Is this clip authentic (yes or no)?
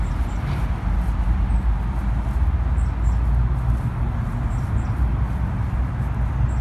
yes